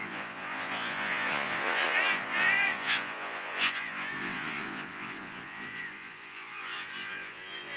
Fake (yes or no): yes